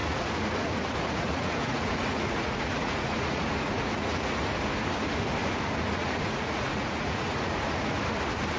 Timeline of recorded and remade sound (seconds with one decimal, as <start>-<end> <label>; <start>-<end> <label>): 0.0-4.4 remade; 4.4-5.4 recorded; 5.4-8.0 remade; 8.0-8.6 recorded